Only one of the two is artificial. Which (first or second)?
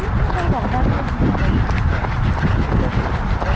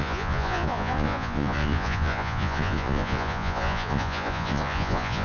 second